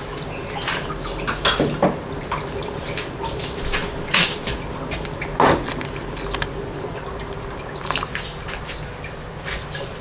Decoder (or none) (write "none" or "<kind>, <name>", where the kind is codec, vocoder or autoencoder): none